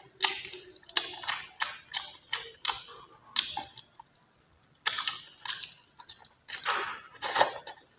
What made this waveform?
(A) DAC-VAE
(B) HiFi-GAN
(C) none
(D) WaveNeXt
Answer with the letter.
C